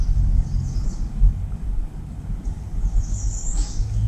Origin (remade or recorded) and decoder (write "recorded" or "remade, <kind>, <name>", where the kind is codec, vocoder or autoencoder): remade, codec, DAC